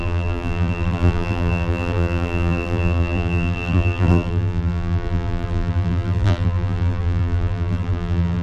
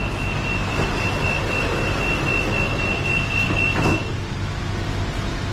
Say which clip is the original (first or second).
second